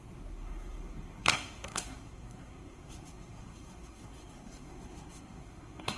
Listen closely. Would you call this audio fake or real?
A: fake